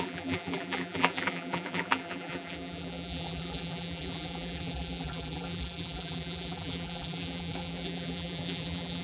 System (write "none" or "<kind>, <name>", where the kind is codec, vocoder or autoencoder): vocoder, BigVGAN v2